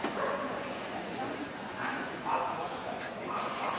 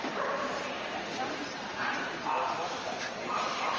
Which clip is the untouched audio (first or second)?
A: second